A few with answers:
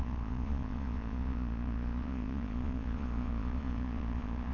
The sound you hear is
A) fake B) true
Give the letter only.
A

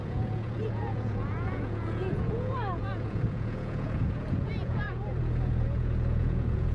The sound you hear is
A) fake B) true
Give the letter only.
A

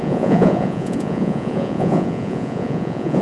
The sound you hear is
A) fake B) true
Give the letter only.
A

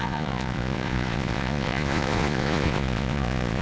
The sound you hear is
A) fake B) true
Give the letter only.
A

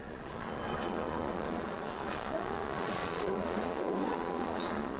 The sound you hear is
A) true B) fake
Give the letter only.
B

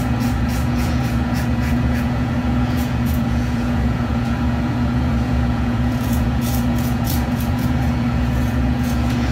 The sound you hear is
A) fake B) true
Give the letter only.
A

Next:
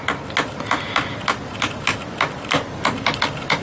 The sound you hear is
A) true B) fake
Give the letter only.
A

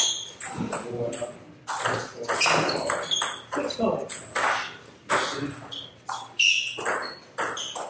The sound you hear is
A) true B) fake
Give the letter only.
A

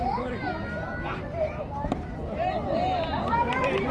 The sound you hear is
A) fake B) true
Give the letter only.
B